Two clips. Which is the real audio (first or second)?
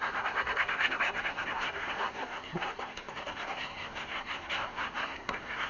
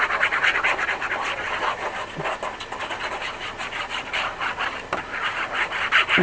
second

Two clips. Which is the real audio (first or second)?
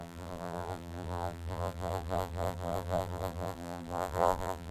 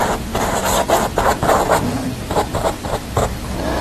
second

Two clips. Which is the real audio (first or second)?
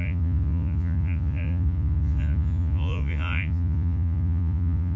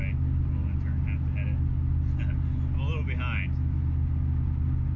second